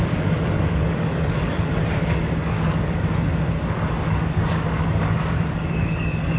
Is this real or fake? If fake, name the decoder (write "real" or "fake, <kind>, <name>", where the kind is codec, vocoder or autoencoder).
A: fake, codec, DAC